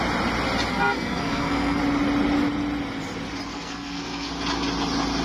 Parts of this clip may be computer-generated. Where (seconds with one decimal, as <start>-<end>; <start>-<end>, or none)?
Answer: 0.7-1.8; 3.5-4.3